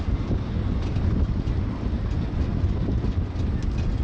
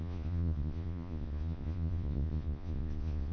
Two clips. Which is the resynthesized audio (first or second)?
second